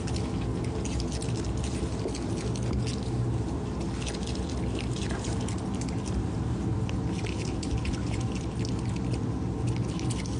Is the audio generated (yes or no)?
no